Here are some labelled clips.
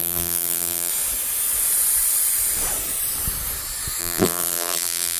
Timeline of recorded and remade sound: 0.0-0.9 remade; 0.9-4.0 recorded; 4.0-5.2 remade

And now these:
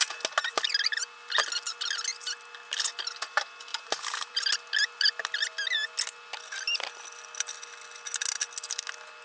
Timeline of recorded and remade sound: 0.0-3.7 recorded; 3.7-4.4 remade; 4.4-9.2 recorded

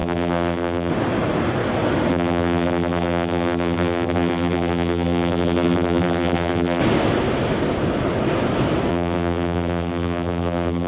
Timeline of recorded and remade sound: 0.0-0.9 remade; 0.9-2.1 recorded; 2.1-6.8 remade; 6.8-8.9 recorded; 8.9-10.9 remade

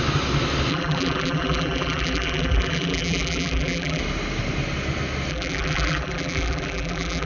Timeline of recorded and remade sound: 0.0-0.7 recorded; 0.7-4.0 remade; 4.0-5.3 recorded; 5.3-7.3 remade

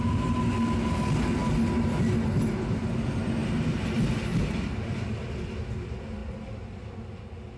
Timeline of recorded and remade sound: 0.0-7.6 recorded

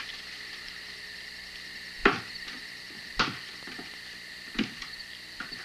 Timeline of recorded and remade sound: 0.0-5.6 remade

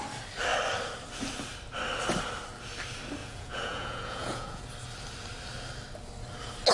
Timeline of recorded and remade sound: 0.0-3.2 recorded; 3.2-4.6 remade; 4.6-6.7 recorded